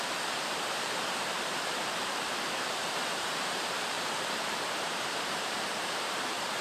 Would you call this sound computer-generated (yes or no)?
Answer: yes